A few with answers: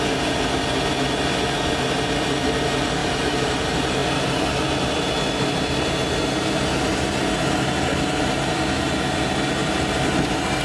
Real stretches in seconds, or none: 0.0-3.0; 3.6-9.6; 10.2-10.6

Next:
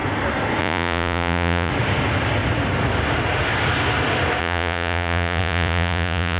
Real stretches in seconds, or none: 0.0-0.6; 1.7-4.4

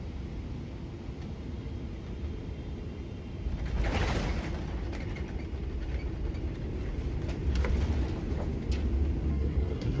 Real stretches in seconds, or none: 0.0-9.3

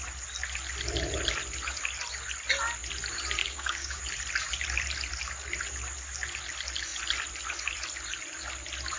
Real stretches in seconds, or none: 0.0-3.4; 4.0-9.0

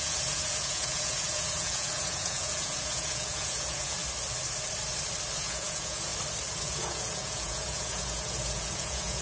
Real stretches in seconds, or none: 4.0-5.4; 6.1-6.6

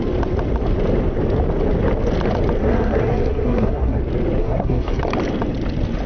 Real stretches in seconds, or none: 0.0-2.6; 4.0-4.4; 5.0-6.1

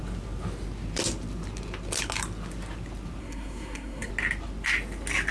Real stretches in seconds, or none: 0.0-3.2; 4.1-5.3